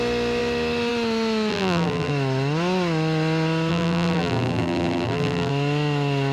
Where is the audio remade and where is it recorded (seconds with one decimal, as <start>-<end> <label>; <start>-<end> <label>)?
0.0-1.5 recorded; 1.5-2.1 remade; 2.1-3.7 recorded; 3.7-5.5 remade; 5.5-6.3 recorded